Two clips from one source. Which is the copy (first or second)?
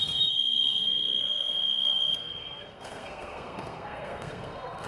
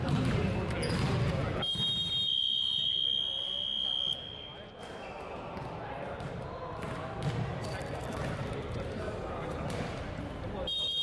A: first